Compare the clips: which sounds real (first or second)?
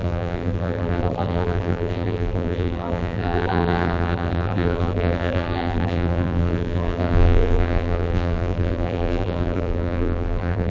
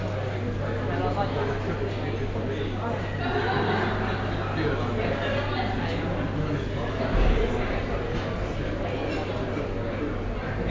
second